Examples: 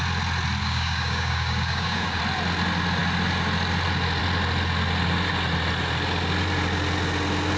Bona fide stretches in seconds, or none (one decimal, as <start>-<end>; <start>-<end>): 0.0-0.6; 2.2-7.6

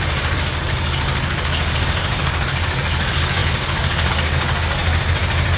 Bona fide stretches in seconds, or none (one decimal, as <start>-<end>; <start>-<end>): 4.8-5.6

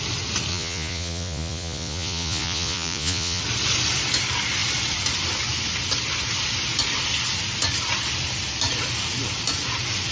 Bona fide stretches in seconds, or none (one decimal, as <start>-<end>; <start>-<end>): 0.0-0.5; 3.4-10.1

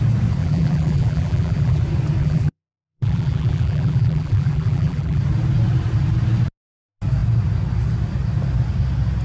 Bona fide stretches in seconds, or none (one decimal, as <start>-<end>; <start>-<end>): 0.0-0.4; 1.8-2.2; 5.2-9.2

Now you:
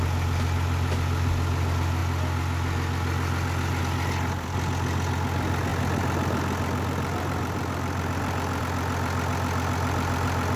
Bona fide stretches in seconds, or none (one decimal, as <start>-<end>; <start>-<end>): 0.0-10.6